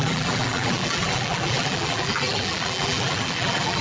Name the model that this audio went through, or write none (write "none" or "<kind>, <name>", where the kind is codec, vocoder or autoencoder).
vocoder, BigVGAN v2